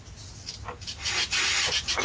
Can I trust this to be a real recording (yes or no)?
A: yes